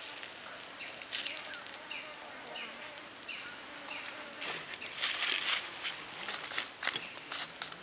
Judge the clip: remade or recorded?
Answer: recorded